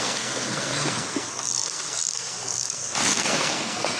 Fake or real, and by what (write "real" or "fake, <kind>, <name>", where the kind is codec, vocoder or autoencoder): fake, codec, SNAC